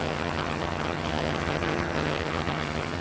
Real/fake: fake